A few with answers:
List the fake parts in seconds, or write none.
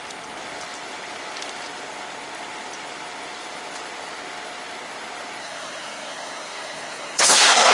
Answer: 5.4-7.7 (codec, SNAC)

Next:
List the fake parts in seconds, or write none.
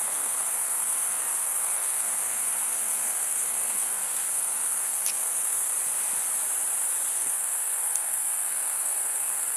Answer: 0.0-5.7 (codec, SNAC); 7.1-9.6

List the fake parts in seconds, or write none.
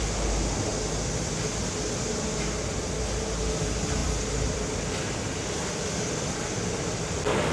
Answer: 4.0-6.4 (vocoder, BigVGAN v2)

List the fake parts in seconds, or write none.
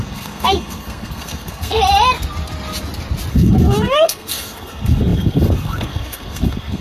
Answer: 0.0-1.8 (codec, SNAC); 3.3-6.8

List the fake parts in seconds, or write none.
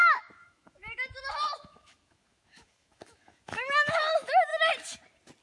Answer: 0.0-4.5 (autoencoder, DAC-VAE)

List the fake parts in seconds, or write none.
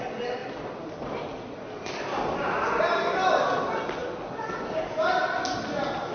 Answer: none